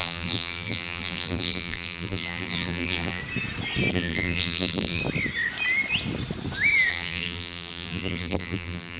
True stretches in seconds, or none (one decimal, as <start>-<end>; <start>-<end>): 3.2-3.9; 5.0-6.9